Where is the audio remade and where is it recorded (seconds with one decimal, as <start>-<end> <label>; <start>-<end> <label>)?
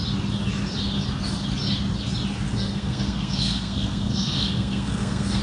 0.0-2.5 recorded; 2.5-5.4 remade